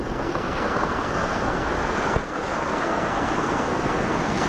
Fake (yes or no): yes